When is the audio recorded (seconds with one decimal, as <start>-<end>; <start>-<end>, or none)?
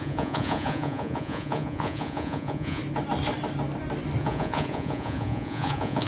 2.8-4.2